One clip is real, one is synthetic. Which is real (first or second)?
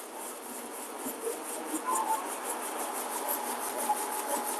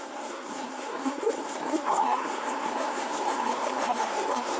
first